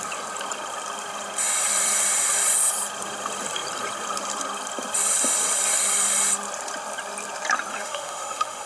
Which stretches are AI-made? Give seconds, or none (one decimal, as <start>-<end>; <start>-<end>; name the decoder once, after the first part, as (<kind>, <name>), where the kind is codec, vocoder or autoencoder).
7.7-8.7 (autoencoder, DAC-VAE)